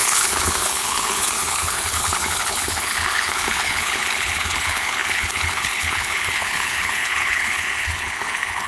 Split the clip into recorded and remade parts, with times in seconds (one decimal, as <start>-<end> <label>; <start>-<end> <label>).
0.0-8.7 remade